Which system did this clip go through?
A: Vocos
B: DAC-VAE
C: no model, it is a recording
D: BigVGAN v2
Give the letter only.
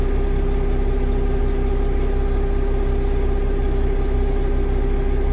C